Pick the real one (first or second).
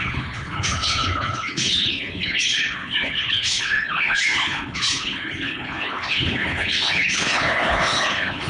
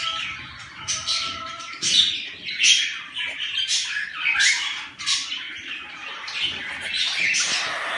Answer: second